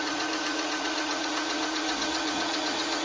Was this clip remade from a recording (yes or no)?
yes